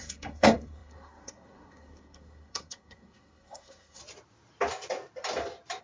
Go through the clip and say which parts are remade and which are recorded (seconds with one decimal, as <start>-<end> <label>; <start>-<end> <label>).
0.0-4.0 remade; 4.0-5.8 recorded